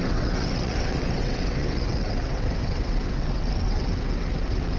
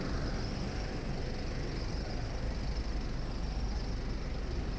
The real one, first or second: second